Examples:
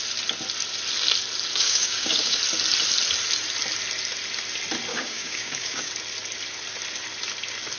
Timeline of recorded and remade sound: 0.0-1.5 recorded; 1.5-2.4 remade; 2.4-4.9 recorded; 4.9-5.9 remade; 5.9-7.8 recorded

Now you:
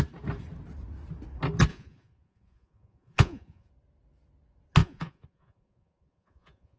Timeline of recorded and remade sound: 0.0-1.7 recorded; 1.7-3.7 remade; 3.7-4.8 recorded; 4.8-6.8 remade